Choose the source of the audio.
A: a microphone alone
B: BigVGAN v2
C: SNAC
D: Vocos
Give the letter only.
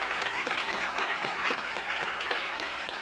C